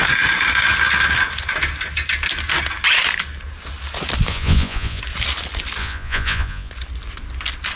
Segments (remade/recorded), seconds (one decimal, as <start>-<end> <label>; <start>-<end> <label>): 0.0-4.3 recorded; 4.3-5.0 remade; 5.0-5.8 recorded; 5.8-6.7 remade; 6.7-7.8 recorded